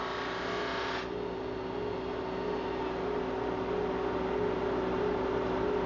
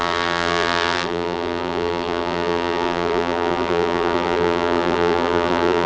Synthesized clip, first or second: second